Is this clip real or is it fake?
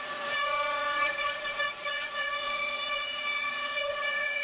fake